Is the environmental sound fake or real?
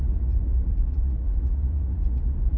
fake